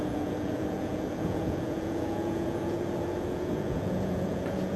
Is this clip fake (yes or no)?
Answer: yes